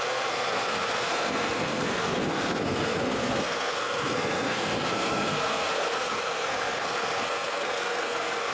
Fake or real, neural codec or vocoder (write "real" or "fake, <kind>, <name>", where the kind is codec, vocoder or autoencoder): fake, codec, SNAC